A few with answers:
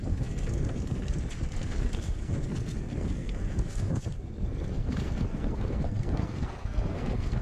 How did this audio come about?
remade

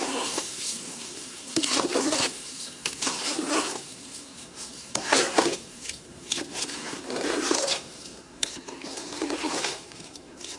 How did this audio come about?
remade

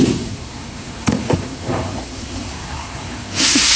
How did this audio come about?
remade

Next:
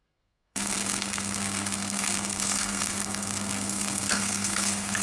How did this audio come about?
remade